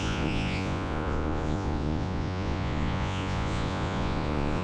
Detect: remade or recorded remade